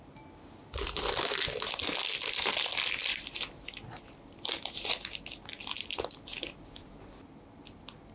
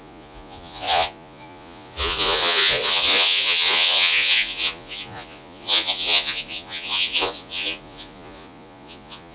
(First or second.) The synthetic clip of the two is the second